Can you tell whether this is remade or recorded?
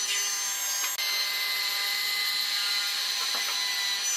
recorded